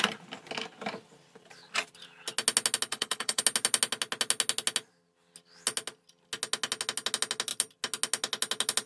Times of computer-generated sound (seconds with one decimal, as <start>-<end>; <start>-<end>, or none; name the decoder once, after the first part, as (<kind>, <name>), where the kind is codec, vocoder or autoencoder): 2.9-3.4 (codec, HILCodec)

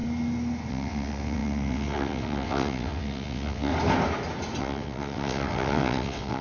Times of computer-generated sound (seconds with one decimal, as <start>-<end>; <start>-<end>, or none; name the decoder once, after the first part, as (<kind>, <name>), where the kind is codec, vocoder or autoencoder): 0.7-3.7 (vocoder, WaveNeXt); 4.6-6.4

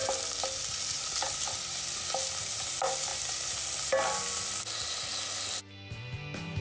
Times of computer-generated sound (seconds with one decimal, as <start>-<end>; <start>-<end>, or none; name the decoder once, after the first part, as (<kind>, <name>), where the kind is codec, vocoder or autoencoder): none

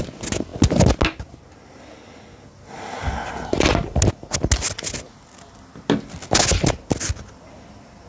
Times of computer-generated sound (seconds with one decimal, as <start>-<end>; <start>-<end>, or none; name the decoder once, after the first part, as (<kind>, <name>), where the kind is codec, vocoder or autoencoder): none

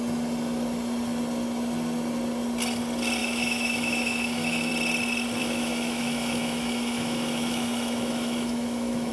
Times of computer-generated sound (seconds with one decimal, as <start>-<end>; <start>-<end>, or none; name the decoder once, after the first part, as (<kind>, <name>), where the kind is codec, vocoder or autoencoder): 3.2-4.7 (autoencoder, DAC-VAE); 5.4-9.1

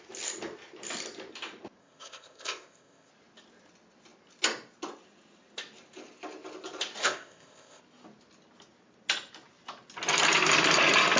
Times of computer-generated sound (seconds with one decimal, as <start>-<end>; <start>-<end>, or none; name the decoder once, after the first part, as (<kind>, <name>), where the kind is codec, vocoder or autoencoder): 1.8-3.1 (codec, ZipCodec); 7.0-7.8

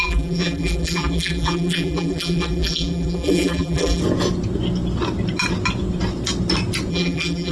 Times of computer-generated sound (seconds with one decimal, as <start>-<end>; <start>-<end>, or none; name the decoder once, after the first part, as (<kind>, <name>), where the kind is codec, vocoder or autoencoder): 0.0-4.0 (vocoder, BigVGAN v2); 6.9-7.5

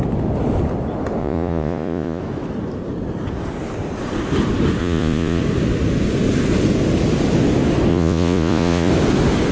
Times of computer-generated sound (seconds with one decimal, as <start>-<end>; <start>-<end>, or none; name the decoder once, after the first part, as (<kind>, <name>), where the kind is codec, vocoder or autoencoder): 1.2-2.2 (vocoder, Vocos); 4.8-5.4; 7.9-8.9